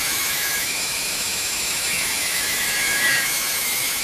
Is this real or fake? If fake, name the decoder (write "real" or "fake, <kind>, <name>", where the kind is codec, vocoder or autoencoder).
fake, autoencoder, DAC-VAE